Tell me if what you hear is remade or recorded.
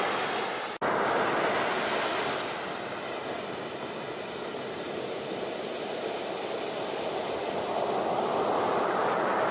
recorded